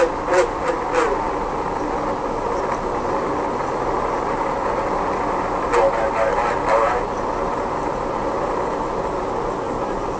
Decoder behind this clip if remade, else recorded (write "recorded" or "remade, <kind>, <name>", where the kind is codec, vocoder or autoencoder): recorded